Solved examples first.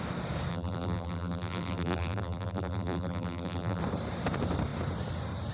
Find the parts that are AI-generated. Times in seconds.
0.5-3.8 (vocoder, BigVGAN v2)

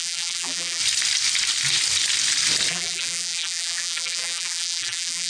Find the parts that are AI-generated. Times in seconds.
0.0-0.8 (vocoder, BigVGAN v2); 2.7-5.3

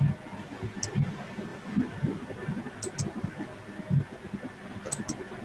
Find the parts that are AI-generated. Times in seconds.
1.5-3.6 (vocoder, BigVGAN v2)